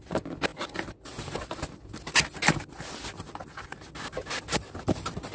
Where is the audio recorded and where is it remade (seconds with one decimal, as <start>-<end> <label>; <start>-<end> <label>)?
0.0-5.3 recorded